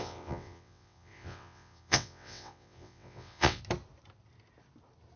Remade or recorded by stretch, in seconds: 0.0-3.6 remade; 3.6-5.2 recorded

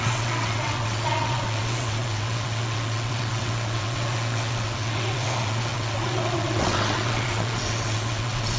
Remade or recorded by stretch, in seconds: 0.0-8.6 remade

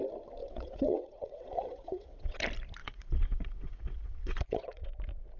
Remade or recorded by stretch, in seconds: 0.0-0.4 recorded; 0.4-2.4 remade; 2.4-2.8 recorded; 2.8-5.0 remade; 5.0-5.4 recorded

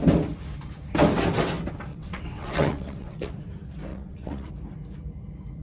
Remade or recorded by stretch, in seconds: 0.0-1.9 recorded; 1.9-3.3 remade; 3.3-3.9 recorded; 3.9-4.5 remade; 4.5-5.6 recorded

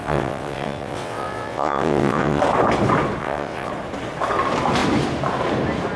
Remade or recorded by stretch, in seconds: 0.0-2.4 remade; 2.4-3.2 recorded; 3.2-3.7 remade; 3.7-6.0 recorded

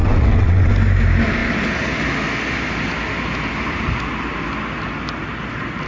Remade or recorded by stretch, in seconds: 0.0-0.7 remade; 0.7-5.9 recorded

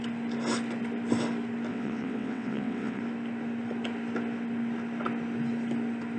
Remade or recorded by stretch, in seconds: 0.0-1.7 recorded; 1.7-3.0 remade; 3.0-6.2 recorded

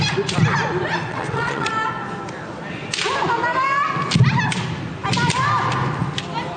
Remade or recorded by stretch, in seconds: 0.0-1.1 recorded; 1.1-1.7 remade; 1.7-6.6 recorded